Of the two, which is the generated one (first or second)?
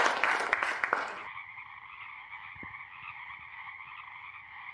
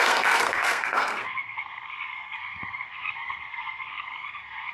second